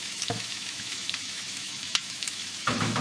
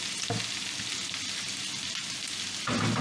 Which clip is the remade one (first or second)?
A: first